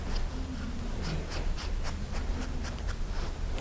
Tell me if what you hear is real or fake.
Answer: real